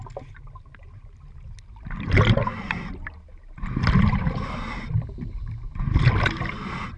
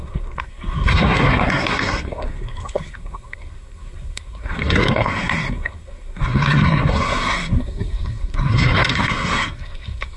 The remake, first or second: second